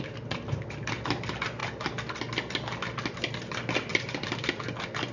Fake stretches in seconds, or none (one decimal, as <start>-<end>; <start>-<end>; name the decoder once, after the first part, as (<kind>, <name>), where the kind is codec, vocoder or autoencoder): 3.9-4.5 (vocoder, BigVGAN v2)